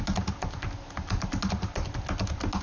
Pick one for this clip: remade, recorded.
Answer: recorded